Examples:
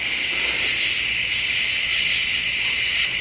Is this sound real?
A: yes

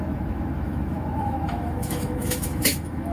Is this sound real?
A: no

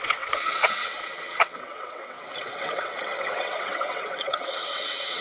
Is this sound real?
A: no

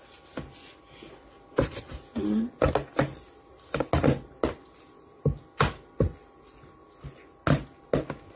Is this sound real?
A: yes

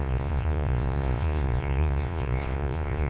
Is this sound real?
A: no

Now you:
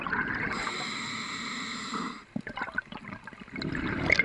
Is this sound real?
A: yes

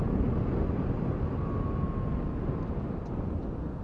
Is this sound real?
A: yes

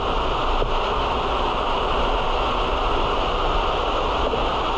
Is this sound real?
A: yes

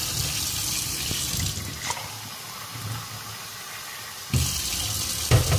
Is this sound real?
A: yes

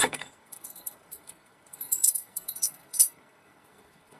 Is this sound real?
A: no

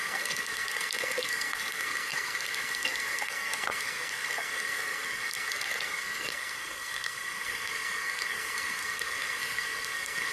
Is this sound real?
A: no